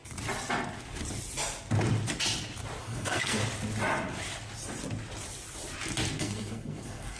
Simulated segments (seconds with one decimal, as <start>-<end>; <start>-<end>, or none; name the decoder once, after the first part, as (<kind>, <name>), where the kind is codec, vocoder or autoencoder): 2.8-3.4 (codec, SNAC); 6.2-7.2